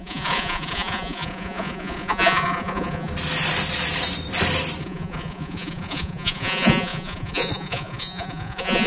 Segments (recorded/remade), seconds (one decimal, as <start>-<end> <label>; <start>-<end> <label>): 0.0-3.1 remade; 3.1-4.8 recorded; 4.8-8.9 remade